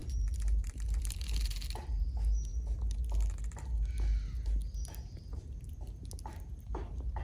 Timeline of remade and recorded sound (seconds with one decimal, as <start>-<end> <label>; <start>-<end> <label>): 0.0-2.5 remade; 2.5-6.8 recorded; 6.8-7.2 remade